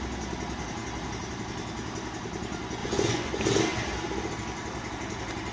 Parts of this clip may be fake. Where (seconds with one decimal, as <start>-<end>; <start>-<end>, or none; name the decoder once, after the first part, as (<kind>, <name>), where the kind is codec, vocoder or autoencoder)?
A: 2.8-3.3 (vocoder, Vocos)